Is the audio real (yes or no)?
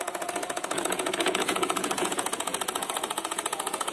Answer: no